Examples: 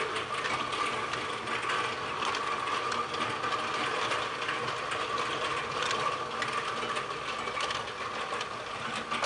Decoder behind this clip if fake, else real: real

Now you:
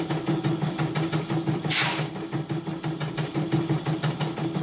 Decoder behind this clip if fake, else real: real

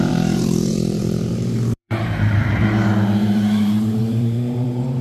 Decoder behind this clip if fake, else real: fake, vocoder, BigVGAN v2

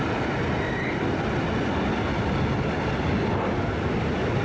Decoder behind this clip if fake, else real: fake, vocoder, BigVGAN v2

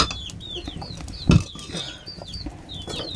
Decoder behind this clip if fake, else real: real